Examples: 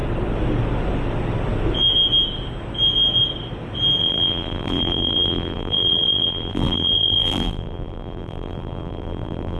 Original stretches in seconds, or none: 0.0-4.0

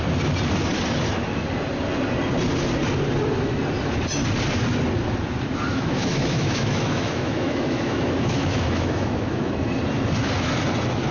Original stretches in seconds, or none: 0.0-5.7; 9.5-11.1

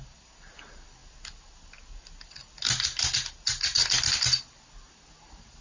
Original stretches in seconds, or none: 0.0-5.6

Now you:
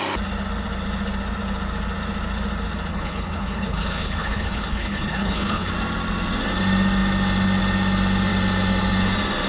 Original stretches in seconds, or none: 0.0-2.9; 5.7-9.5

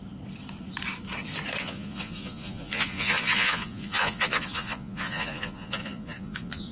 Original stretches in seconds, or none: 0.0-1.6

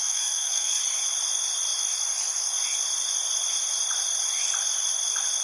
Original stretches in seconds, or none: 0.8-5.4

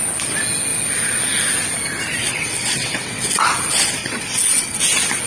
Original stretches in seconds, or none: 0.0-2.2; 3.6-4.0; 4.8-5.3

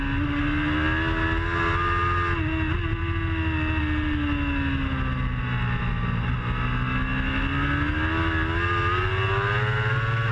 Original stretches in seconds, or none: 0.0-10.3